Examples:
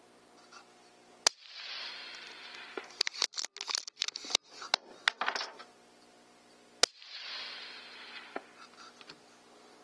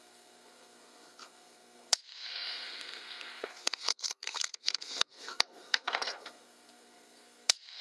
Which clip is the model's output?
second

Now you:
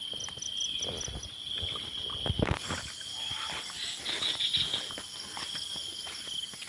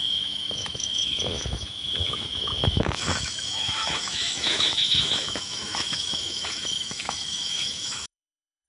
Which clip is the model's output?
second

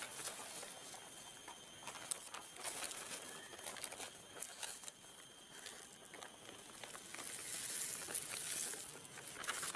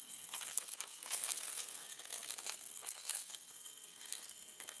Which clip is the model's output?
second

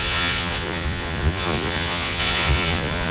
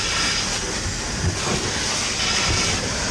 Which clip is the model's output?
first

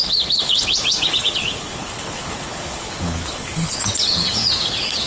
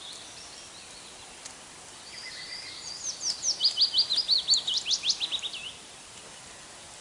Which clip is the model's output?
first